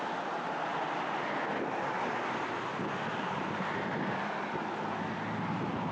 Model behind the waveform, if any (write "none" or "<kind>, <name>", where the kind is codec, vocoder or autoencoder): none